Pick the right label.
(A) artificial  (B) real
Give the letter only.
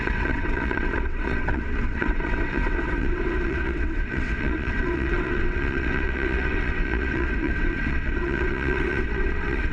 A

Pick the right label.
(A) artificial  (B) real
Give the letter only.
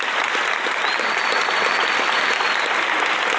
B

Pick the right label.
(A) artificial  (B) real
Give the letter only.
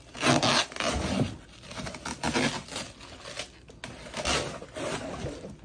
B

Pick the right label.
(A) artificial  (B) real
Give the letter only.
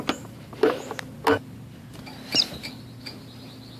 B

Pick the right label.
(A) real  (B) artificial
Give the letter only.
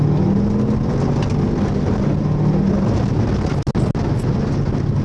A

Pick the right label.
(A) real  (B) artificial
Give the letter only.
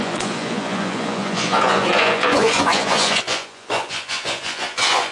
B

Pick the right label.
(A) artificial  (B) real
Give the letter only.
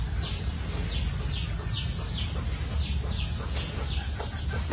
B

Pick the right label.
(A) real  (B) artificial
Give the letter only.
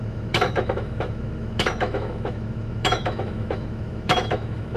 B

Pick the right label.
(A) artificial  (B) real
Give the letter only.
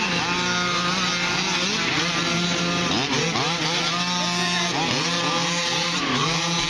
B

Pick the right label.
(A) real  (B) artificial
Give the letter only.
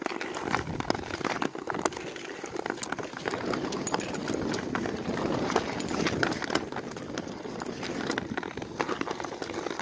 A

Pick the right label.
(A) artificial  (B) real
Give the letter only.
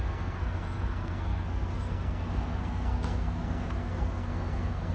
A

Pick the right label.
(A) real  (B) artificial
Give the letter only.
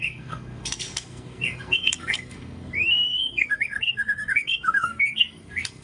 B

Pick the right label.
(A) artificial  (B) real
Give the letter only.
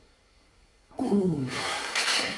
A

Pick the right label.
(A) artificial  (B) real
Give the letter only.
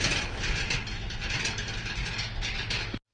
B